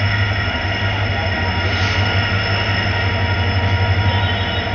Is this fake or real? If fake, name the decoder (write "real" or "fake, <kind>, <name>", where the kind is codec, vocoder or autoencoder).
real